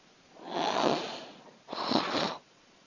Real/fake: fake